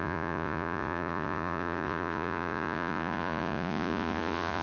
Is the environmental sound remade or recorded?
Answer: remade